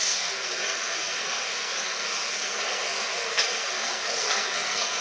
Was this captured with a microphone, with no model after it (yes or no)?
no